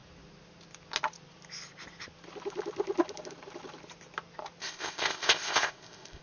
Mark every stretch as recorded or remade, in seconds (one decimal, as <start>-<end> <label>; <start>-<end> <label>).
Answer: 0.0-4.6 recorded; 4.6-6.2 remade